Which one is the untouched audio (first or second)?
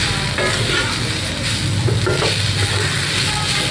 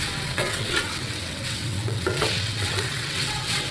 first